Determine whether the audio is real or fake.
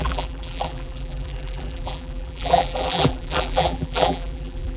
fake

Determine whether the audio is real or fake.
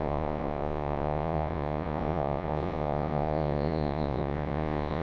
fake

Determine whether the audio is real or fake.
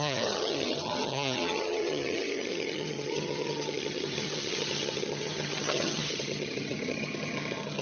fake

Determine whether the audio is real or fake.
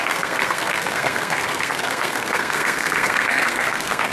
fake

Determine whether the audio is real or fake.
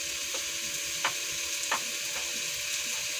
real